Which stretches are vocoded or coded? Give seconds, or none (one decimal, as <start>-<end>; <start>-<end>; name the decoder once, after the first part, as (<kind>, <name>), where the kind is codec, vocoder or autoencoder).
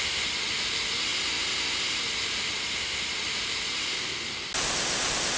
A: none